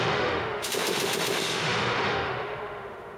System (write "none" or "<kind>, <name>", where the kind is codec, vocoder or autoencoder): autoencoder, DAC-VAE